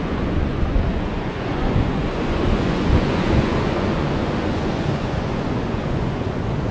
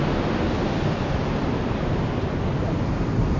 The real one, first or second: second